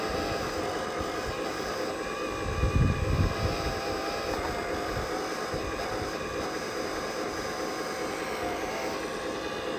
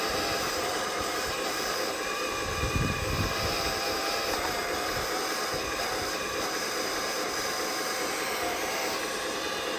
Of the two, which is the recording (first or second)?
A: first